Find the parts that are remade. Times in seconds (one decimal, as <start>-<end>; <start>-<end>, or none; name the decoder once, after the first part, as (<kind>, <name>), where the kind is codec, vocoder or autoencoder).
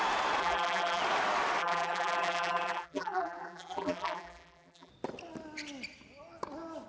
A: 0.4-1.0 (vocoder, BigVGAN v2); 1.6-4.9